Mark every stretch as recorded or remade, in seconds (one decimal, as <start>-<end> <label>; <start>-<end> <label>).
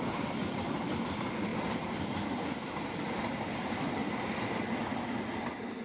0.0-1.5 recorded; 1.5-2.7 remade; 2.7-5.8 recorded